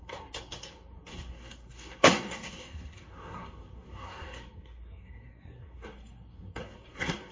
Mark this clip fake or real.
fake